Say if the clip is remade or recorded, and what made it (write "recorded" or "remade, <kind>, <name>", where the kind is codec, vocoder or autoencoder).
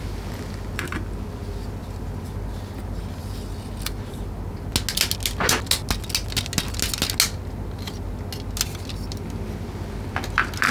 recorded